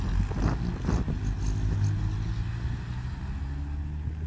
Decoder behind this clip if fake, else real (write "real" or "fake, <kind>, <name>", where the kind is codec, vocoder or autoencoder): real